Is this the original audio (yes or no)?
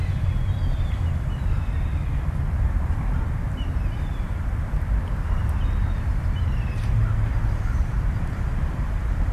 no